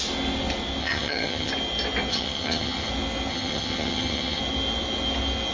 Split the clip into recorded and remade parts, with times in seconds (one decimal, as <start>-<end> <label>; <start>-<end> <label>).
0.0-0.8 recorded; 0.8-1.5 remade; 1.5-2.1 recorded; 2.1-2.9 remade; 2.9-3.3 recorded; 3.3-4.4 remade; 4.4-5.5 recorded